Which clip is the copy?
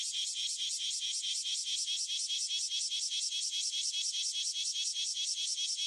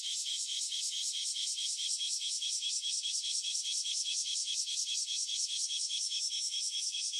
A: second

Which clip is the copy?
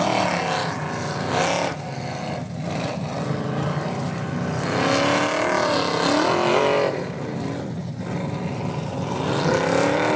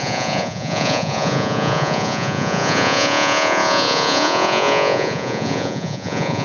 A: second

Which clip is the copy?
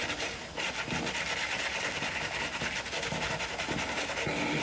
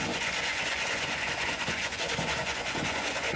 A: second